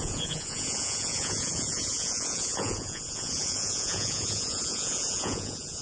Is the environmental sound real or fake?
fake